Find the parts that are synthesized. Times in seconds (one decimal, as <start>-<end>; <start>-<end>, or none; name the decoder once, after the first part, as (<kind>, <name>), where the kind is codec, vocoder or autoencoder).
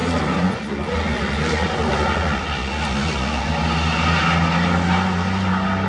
0.0-3.5 (vocoder, Vocos)